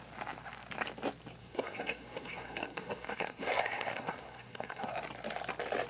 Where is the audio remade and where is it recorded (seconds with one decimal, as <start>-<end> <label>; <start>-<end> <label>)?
0.0-1.4 recorded; 1.4-4.9 remade; 4.9-5.9 recorded